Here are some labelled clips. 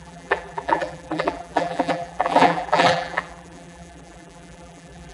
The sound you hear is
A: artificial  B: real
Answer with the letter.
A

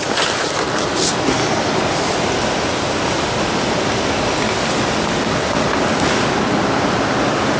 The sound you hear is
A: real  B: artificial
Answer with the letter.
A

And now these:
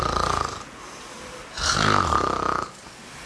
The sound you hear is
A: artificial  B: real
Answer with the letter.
B